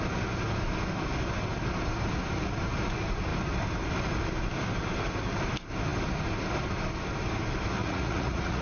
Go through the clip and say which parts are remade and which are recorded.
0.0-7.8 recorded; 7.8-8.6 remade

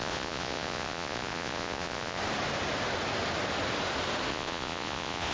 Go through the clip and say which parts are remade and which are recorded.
0.0-2.2 remade; 2.2-4.3 recorded; 4.3-5.3 remade

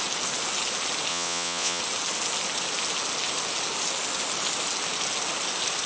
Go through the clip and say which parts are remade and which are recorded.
0.0-1.1 recorded; 1.1-1.8 remade; 1.8-5.9 recorded

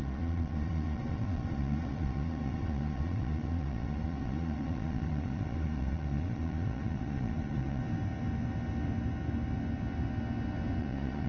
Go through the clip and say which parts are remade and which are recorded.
0.0-7.8 remade; 7.8-10.8 recorded; 10.8-11.3 remade